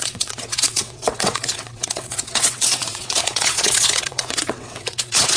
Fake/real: fake